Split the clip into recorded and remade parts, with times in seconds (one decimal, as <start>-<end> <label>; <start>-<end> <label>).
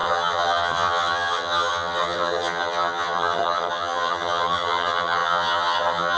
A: 0.0-6.2 remade